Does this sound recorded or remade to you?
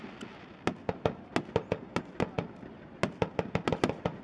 recorded